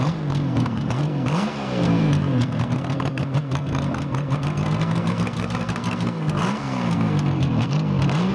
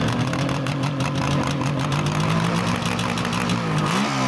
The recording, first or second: second